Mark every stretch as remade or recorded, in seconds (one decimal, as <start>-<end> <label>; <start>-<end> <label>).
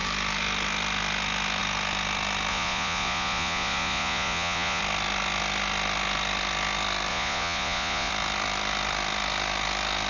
0.0-2.5 recorded; 2.5-4.8 remade; 4.8-7.1 recorded; 7.1-8.1 remade; 8.1-10.1 recorded